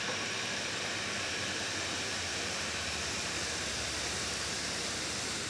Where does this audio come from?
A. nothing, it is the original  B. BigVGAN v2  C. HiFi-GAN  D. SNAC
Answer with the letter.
B